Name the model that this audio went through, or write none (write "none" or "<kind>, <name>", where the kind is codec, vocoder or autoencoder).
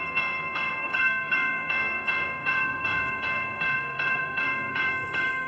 codec, SNAC